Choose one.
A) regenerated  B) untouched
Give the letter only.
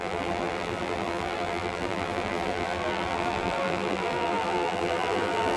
A